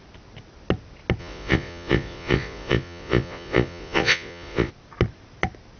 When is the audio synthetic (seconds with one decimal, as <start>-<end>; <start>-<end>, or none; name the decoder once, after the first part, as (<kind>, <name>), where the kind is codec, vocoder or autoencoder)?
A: 1.2-4.7 (vocoder, Vocos)